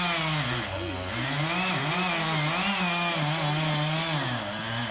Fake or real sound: real